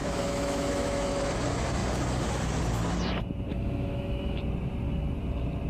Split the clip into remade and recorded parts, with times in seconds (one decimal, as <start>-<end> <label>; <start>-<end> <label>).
0.0-1.1 remade; 1.1-3.5 recorded; 3.5-4.4 remade; 4.4-5.7 recorded